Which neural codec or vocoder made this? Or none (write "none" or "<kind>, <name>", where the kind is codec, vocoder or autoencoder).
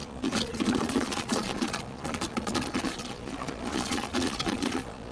vocoder, Vocos